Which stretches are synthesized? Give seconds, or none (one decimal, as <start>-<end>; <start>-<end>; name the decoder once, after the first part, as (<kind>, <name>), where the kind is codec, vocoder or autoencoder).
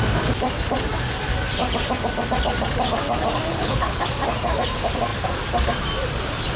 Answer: 3.5-4.0 (codec, HILCodec)